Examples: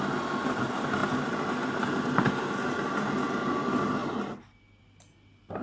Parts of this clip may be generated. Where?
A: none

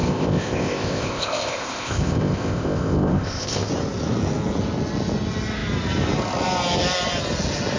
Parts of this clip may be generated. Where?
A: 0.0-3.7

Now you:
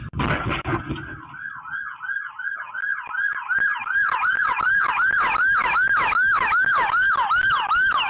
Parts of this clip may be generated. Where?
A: 2.9-4.9

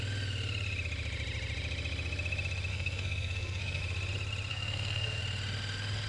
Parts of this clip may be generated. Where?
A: 2.7-3.8; 4.5-5.2

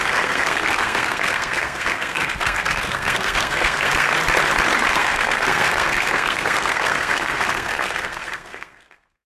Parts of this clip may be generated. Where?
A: 0.0-4.1; 4.9-9.3

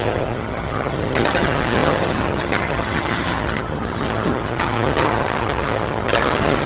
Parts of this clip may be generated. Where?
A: 0.0-6.7